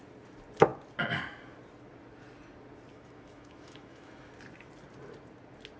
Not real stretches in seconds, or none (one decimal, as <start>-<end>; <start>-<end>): 2.9-4.3